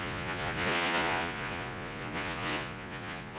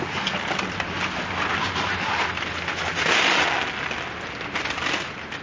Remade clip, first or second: first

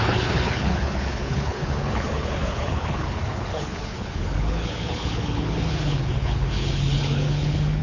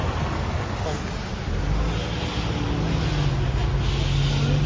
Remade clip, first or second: first